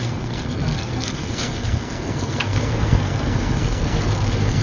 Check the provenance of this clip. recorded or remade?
remade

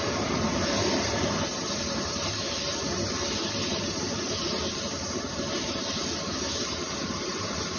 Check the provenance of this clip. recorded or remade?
remade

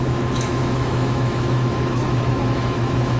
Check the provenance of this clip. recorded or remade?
remade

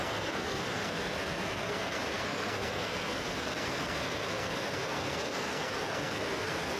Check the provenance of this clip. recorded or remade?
remade